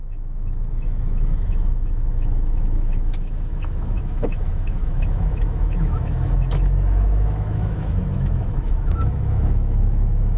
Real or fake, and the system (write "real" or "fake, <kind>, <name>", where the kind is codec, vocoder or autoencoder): fake, autoencoder, DAC-VAE